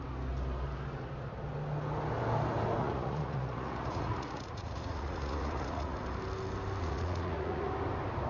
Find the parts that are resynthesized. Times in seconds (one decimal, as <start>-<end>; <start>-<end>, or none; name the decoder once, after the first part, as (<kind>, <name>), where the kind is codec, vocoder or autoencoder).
2.8-6.0 (vocoder, Vocos); 6.8-7.7